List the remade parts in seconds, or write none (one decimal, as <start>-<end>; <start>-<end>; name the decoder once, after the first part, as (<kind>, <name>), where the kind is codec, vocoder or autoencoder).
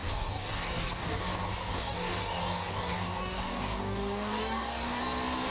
0.0-1.2 (codec, DAC); 1.7-5.0